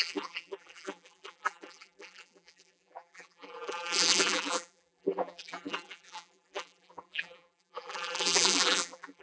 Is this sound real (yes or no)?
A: no